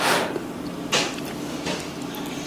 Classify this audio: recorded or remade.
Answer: recorded